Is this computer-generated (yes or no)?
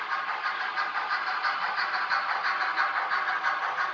no